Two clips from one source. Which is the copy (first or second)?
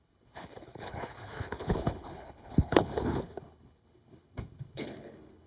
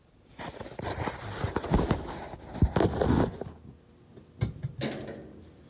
first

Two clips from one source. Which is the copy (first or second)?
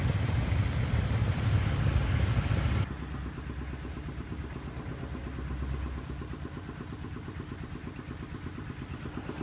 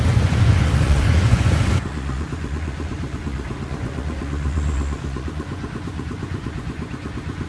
second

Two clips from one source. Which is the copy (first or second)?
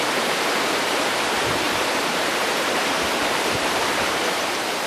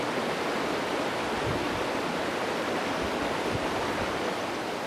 first